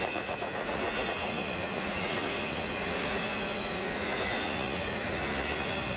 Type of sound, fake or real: fake